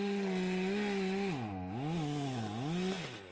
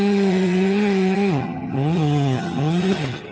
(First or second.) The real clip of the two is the first